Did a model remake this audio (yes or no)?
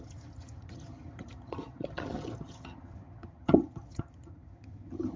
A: yes